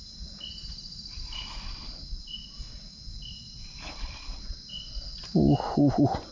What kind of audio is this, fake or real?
real